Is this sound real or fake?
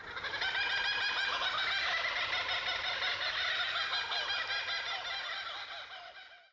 real